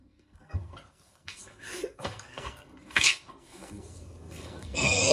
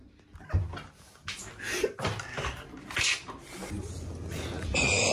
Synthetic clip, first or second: first